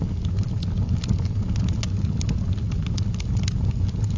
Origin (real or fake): real